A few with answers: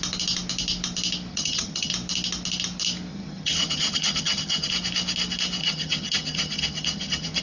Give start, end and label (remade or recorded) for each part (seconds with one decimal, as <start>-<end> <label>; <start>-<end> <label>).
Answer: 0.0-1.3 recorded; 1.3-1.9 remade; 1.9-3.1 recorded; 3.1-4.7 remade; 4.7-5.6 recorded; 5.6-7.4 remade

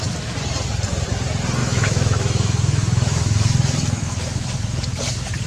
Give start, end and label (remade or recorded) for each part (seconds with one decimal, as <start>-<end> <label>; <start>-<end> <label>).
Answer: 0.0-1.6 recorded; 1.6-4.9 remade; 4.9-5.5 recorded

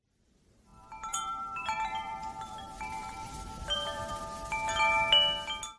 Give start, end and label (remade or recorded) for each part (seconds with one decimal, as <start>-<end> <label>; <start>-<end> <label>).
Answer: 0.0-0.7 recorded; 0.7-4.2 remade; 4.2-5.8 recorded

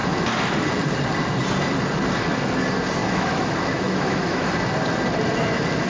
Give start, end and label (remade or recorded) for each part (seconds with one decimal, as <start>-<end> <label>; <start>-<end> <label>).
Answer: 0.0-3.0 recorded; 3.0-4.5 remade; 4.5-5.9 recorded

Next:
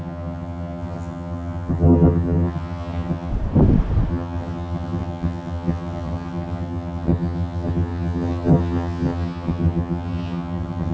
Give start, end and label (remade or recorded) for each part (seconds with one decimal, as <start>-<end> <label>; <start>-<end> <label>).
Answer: 0.0-3.3 remade; 3.3-4.1 recorded; 4.1-10.9 remade

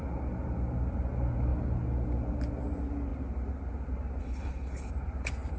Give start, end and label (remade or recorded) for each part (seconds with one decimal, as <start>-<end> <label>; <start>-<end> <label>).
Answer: 0.0-4.2 recorded; 4.2-4.9 remade; 4.9-5.6 recorded

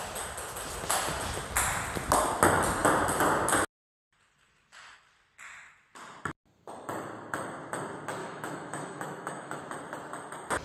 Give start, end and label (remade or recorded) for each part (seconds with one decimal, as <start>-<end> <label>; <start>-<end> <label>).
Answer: 0.0-8.2 recorded; 8.2-9.6 remade; 9.6-10.6 recorded

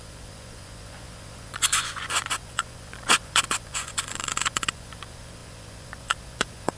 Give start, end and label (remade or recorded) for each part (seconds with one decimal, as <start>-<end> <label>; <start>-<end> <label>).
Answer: 0.0-6.8 remade